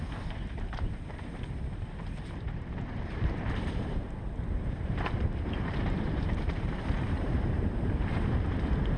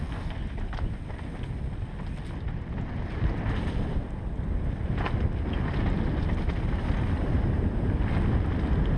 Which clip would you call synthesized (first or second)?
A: first